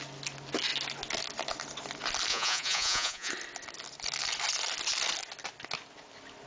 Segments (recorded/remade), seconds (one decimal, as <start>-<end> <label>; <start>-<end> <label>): 0.0-2.3 recorded; 2.3-3.3 remade; 3.3-6.5 recorded